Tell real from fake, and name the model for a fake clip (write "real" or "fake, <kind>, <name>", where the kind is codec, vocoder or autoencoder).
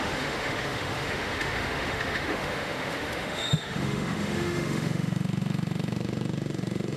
fake, autoencoder, DAC-VAE